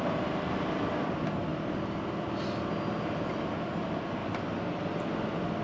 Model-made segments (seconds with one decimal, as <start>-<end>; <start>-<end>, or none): none